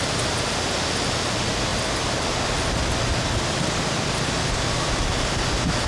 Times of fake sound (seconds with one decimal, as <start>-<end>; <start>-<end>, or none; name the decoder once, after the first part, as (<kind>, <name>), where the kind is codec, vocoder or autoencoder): none

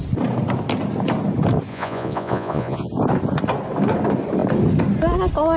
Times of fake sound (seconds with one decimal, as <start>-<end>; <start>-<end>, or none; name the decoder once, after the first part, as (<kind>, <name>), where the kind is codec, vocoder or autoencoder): 1.7-2.9 (vocoder, Vocos)